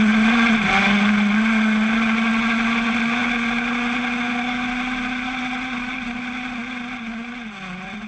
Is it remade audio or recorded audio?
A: recorded